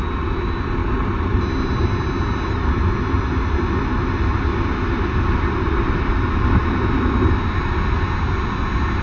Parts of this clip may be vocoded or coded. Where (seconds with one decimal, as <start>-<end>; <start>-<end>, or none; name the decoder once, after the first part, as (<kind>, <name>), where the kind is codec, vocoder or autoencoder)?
none